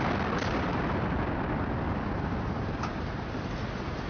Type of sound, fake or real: real